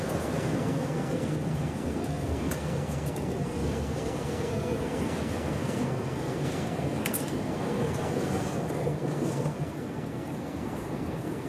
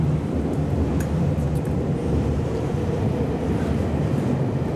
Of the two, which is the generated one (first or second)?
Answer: first